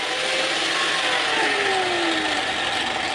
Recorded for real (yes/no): yes